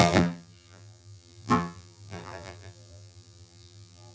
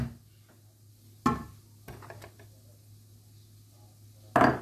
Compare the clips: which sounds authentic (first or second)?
second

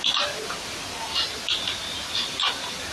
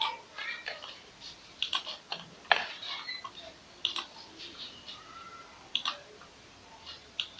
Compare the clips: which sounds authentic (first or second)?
second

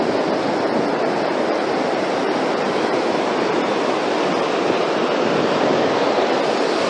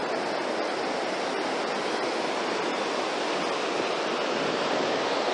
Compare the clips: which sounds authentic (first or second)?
second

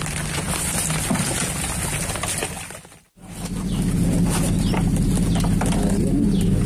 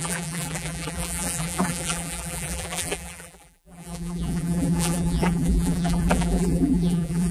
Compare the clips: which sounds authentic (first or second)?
first